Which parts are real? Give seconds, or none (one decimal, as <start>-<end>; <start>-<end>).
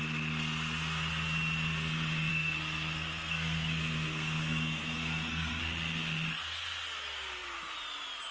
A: 0.0-2.3; 5.6-8.3